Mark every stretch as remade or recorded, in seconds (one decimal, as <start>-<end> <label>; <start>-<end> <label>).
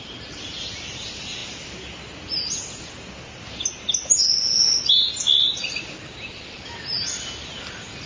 0.0-8.1 recorded